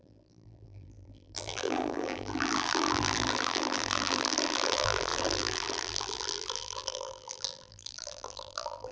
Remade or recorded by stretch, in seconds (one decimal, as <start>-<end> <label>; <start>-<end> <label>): 0.0-8.9 remade